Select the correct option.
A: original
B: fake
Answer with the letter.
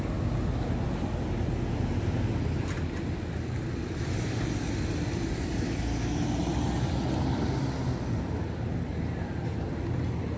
A